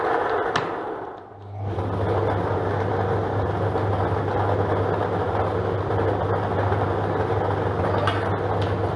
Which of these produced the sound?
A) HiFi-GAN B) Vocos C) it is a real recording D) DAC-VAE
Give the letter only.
C